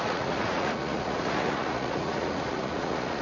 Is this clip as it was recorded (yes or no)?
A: no